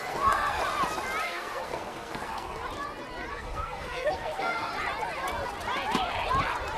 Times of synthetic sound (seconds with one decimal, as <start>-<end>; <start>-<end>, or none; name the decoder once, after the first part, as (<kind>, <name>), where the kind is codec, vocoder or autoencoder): 0.0-0.6 (codec, SNAC); 1.2-2.6; 3.3-4.7